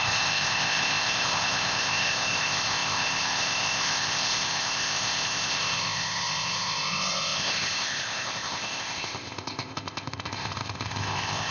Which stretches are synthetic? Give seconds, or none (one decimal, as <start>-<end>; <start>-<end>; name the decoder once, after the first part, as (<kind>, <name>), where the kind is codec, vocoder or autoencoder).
0.0-11.5 (codec, ZipCodec)